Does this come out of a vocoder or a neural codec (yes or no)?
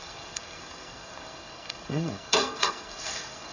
yes